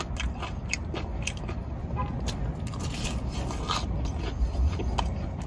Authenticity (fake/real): real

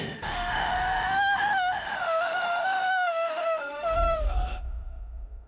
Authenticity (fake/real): fake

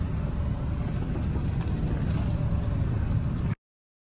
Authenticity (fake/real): real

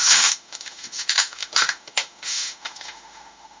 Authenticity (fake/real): fake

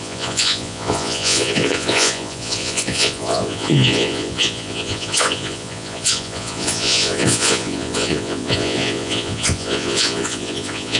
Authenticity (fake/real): fake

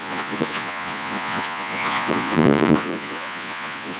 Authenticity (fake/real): fake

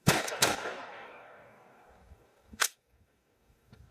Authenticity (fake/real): fake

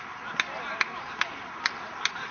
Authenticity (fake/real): real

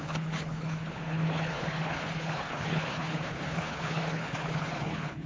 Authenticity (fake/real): fake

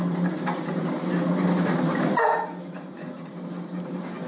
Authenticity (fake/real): real